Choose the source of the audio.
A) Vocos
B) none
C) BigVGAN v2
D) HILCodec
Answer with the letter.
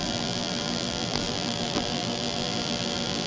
C